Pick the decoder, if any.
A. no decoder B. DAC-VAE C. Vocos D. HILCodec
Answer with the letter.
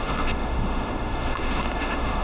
B